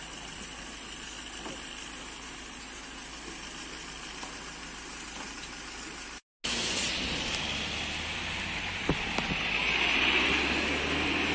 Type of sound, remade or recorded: recorded